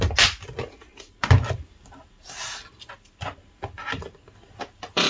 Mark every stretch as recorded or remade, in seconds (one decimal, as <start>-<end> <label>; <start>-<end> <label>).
0.0-5.1 recorded